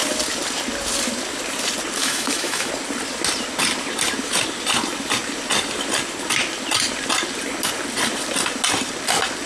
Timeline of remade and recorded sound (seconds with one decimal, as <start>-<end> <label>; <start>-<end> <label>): 0.0-2.0 recorded; 2.0-2.7 remade; 2.7-9.5 recorded